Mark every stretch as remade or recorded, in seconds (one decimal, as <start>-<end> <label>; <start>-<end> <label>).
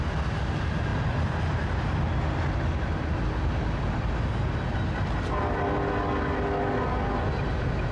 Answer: 0.0-7.9 recorded